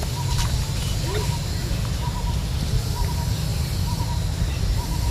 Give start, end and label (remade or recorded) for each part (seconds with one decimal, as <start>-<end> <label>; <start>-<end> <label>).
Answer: 0.0-5.1 recorded